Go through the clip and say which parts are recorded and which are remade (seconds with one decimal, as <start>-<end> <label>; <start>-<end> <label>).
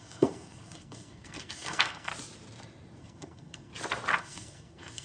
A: 0.0-2.1 remade; 2.1-3.0 recorded; 3.0-3.7 remade; 3.7-4.2 recorded; 4.2-5.0 remade